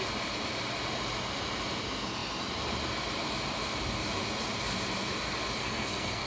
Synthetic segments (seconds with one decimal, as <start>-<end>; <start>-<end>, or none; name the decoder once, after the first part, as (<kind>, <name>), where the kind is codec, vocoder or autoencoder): 5.6-6.3 (codec, SNAC)